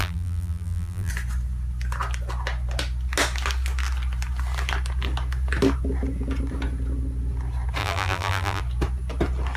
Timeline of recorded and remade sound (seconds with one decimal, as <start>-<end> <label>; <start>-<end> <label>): 0.0-1.1 remade; 1.1-7.8 recorded; 7.8-8.6 remade; 8.6-9.6 recorded